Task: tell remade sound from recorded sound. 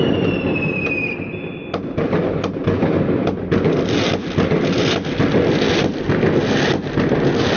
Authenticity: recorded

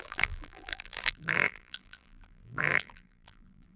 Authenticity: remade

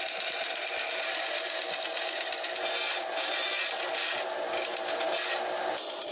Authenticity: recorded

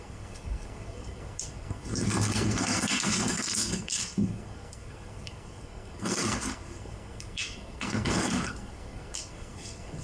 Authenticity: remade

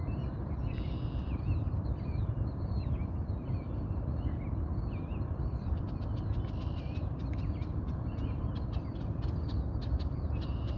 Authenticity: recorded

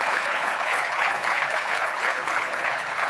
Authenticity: remade